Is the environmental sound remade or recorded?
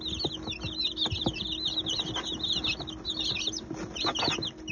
recorded